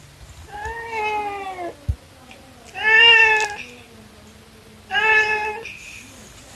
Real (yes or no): yes